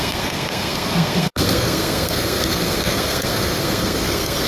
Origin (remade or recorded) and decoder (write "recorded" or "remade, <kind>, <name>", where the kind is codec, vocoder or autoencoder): remade, codec, SNAC